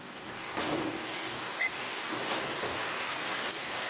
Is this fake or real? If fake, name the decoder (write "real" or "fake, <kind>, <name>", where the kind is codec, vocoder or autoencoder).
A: fake, codec, DAC